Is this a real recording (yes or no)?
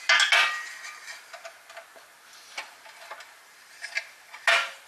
yes